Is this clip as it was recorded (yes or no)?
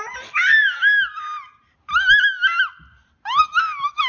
yes